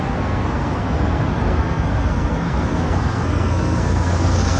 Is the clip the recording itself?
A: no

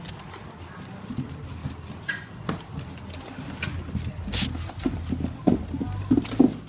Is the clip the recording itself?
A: yes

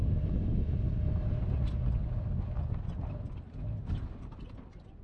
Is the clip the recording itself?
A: yes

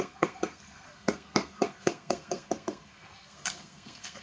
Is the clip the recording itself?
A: no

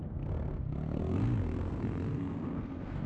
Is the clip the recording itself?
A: no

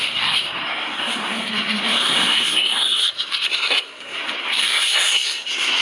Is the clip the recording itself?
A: no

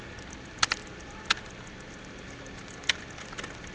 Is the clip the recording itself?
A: yes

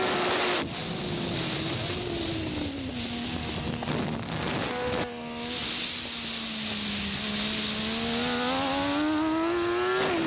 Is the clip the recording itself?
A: yes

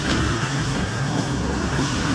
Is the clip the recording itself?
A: no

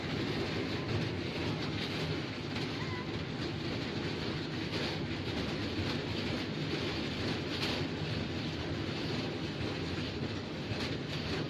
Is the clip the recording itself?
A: yes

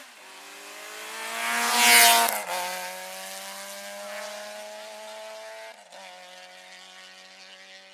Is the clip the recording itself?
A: yes